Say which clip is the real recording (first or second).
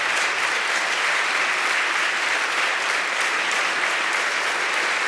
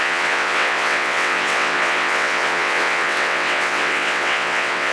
first